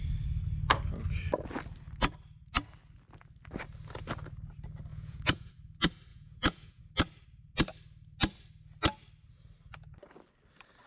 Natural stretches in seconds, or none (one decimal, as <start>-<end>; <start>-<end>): 0.0-4.9; 5.5-6.1; 6.8-10.9